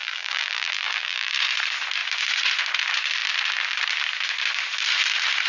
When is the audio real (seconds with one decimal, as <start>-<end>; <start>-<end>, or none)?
1.3-5.5